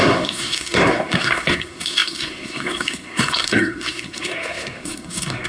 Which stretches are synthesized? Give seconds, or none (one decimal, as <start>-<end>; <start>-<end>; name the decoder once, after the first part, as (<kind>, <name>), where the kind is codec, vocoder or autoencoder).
0.0-5.5 (codec, SNAC)